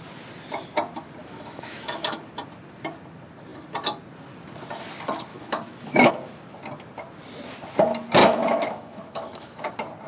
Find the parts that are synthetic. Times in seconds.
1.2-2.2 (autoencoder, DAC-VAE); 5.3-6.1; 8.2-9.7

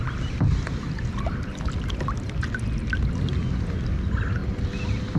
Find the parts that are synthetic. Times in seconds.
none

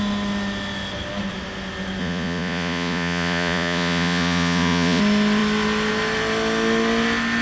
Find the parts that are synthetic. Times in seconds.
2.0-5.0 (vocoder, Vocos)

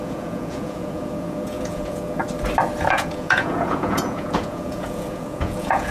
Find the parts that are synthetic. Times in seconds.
0.0-2.2 (vocoder, Vocos); 2.9-5.9

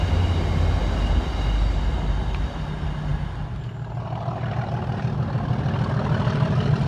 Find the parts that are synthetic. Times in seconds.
none

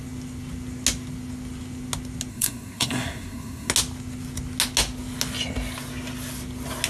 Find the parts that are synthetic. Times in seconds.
2.3-3.7 (codec, SNAC)

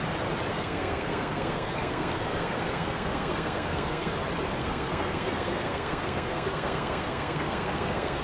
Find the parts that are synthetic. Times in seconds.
0.5-4.1 (codec, SNAC); 4.6-8.2